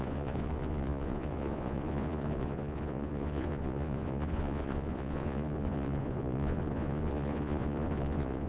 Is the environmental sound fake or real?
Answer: fake